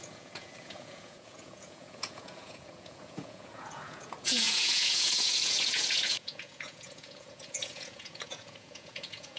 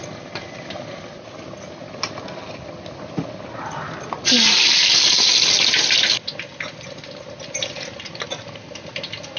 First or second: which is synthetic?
first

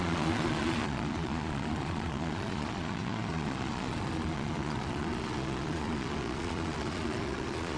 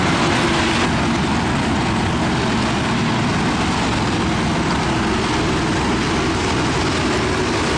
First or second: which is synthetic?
first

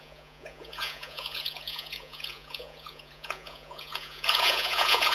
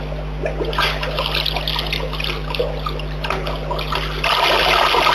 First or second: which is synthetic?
first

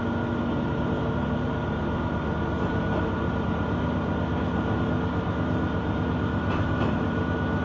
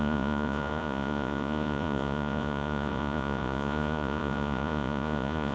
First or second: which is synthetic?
second